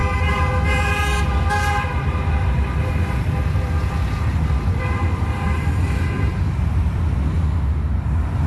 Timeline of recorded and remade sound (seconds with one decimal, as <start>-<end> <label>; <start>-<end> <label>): 0.0-0.5 remade; 0.5-1.9 recorded; 1.9-7.0 remade; 7.0-8.5 recorded